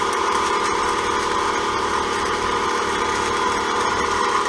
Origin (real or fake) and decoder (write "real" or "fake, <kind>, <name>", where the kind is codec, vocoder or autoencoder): fake, vocoder, BigVGAN v2